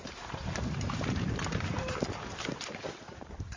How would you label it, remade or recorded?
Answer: remade